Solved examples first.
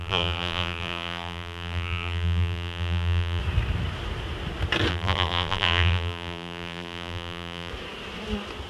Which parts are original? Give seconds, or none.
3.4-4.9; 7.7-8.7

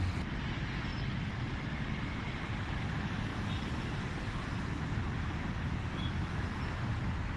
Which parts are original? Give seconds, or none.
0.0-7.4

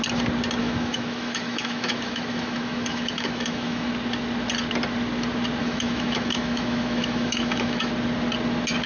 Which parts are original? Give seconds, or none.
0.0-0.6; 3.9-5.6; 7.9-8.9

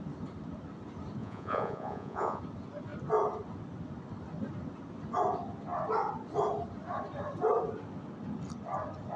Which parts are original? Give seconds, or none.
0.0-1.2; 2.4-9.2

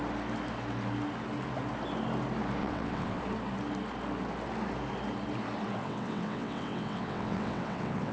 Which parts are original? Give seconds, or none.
0.0-2.6; 3.2-5.8

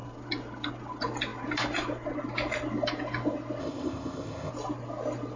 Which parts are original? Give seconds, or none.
0.0-3.6; 4.5-5.4

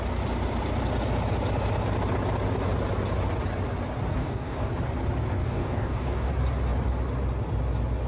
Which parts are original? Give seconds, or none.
0.0-4.2; 4.7-5.4; 6.3-8.1

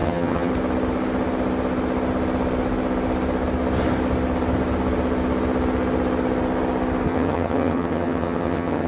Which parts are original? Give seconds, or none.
0.5-7.1